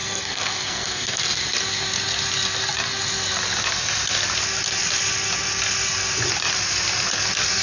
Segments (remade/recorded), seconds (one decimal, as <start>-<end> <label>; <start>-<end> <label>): 0.0-1.2 remade; 1.2-7.6 recorded